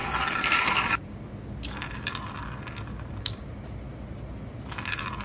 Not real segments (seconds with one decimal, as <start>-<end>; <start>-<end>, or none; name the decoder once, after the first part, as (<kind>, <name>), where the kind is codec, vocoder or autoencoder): none